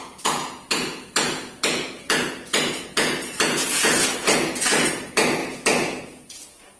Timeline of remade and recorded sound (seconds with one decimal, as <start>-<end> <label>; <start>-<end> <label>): 0.0-6.8 remade